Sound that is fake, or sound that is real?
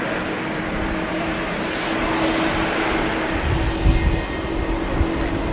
real